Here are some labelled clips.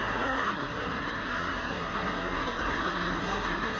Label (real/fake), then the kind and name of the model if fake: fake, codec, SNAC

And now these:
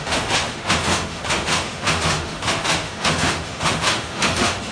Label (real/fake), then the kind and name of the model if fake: fake, autoencoder, DAC-VAE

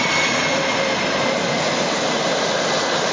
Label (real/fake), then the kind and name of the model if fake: fake, vocoder, BigVGAN v2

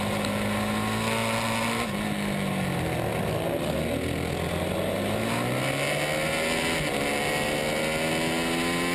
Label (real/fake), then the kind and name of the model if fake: real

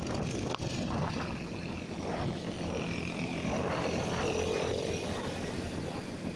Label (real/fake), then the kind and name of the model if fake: real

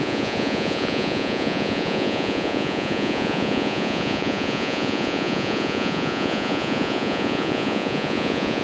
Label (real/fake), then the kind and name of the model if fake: fake, vocoder, Vocos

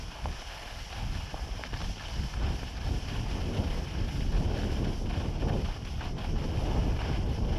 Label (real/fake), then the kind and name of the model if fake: real